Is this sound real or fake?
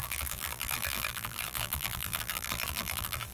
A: fake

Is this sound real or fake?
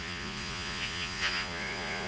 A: fake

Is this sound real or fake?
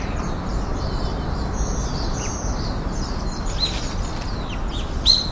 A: real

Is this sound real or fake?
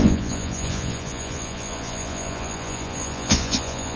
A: fake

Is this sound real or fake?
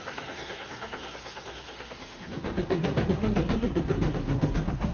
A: fake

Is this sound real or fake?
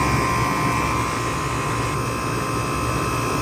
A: real